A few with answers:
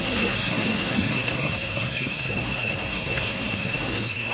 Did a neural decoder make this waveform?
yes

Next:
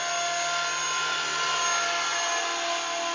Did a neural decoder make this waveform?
no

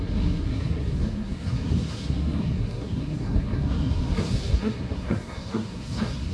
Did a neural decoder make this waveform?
yes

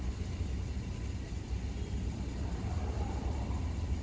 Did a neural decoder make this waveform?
no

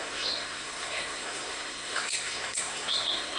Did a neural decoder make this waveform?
yes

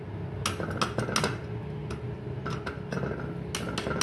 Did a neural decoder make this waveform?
no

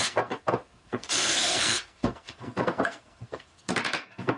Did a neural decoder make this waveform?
yes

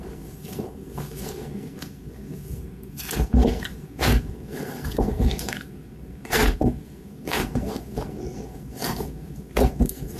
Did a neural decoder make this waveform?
yes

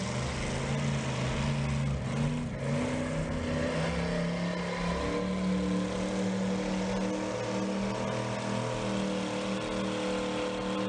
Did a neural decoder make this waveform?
no